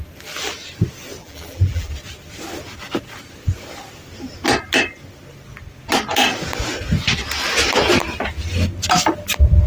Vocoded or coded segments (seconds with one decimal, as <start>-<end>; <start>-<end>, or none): 1.2-1.9